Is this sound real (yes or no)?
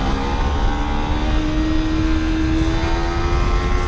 yes